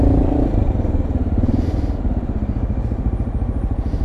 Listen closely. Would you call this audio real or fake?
fake